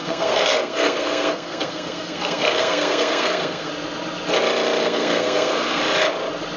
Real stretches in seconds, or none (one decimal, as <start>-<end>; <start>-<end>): 3.7-4.8; 5.8-6.6